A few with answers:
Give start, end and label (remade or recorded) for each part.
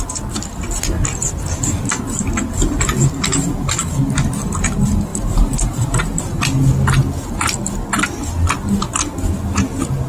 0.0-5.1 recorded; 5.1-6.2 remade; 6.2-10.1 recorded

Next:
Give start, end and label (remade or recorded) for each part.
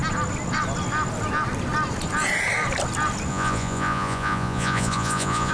0.0-3.3 recorded; 3.3-5.5 remade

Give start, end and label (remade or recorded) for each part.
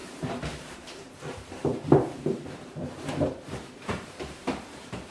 0.0-5.1 remade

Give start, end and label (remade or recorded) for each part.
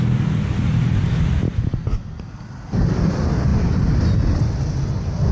0.0-3.5 remade; 3.5-4.0 recorded; 4.0-5.3 remade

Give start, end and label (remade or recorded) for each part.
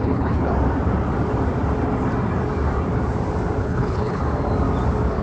0.0-0.5 remade; 0.5-3.6 recorded; 3.6-4.2 remade; 4.2-5.2 recorded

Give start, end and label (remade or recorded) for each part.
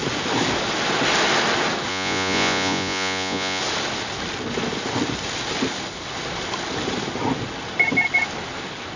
0.0-1.9 recorded; 1.9-3.6 remade; 3.6-9.0 recorded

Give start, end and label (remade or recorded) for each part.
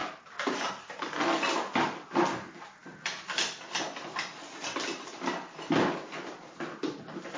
0.0-7.4 recorded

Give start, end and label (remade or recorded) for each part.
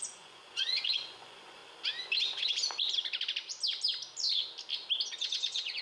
0.0-1.6 remade; 1.6-5.1 recorded; 5.1-5.8 remade